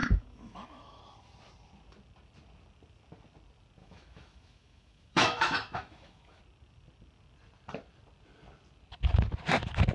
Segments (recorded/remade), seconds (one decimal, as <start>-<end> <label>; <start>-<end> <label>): 0.0-1.0 remade; 1.0-3.8 recorded; 3.8-6.4 remade; 6.4-9.9 recorded